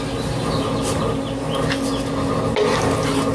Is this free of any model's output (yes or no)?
yes